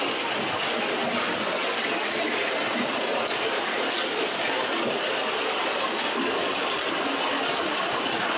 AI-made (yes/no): no